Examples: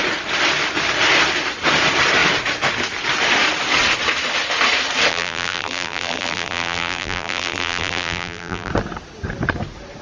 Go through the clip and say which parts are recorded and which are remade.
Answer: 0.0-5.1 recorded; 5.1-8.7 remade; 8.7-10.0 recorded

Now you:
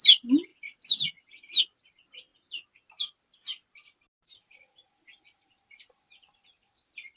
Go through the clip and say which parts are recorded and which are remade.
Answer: 0.0-0.5 recorded; 0.5-1.6 remade; 1.6-7.2 recorded

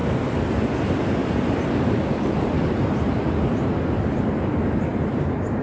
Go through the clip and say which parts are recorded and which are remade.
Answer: 0.0-0.5 remade; 0.5-1.2 recorded; 1.2-4.2 remade; 4.2-5.6 recorded

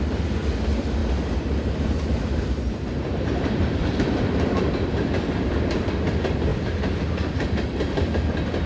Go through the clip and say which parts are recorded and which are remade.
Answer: 0.0-1.0 recorded; 1.0-5.9 remade; 5.9-8.7 recorded

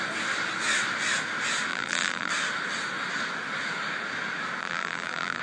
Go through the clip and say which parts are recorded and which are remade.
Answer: 0.0-1.7 recorded; 1.7-2.3 remade; 2.3-4.6 recorded; 4.6-5.4 remade

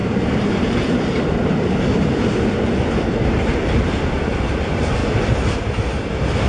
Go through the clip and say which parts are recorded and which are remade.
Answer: 0.0-3.9 remade; 3.9-6.5 recorded